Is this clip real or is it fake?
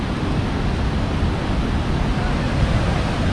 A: real